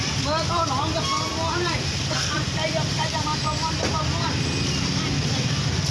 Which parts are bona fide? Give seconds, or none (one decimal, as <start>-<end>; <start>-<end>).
0.0-5.9